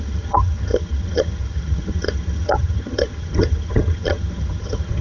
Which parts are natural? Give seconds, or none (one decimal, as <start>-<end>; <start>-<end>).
none